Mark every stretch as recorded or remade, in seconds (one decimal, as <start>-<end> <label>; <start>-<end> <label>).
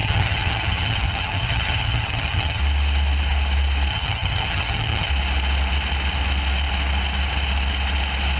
0.0-2.6 remade; 2.6-3.9 recorded; 3.9-5.1 remade; 5.1-8.4 recorded